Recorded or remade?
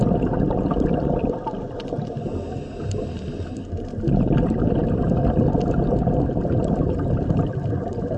recorded